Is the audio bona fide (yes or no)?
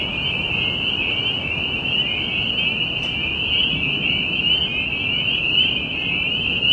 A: yes